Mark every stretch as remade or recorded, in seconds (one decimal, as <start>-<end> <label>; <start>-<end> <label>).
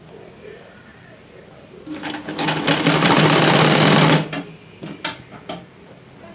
0.0-6.3 recorded